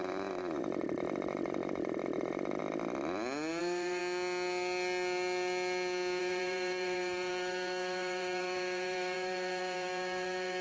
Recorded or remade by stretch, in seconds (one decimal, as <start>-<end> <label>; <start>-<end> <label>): 0.0-2.6 remade; 2.6-3.6 recorded; 3.6-4.0 remade; 4.0-6.2 recorded; 6.2-10.6 remade